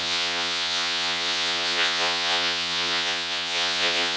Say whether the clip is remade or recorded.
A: remade